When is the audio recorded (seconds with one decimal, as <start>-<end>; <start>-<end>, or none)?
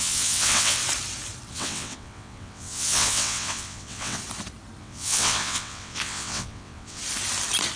0.8-1.5; 4.2-4.8; 7.0-7.8